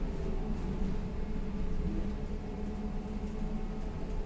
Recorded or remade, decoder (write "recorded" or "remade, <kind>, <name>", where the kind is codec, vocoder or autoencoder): recorded